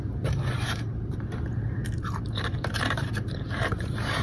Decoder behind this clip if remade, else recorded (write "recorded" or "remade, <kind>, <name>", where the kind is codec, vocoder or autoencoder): remade, vocoder, BigVGAN v2